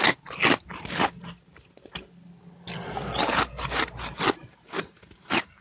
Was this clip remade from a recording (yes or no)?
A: no